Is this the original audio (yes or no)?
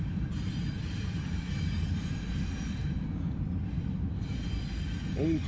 yes